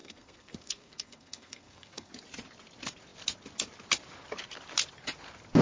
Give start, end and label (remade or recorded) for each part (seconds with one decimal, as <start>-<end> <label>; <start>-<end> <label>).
0.0-2.1 remade; 2.1-5.6 recorded